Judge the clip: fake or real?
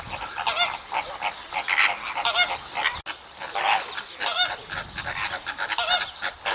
real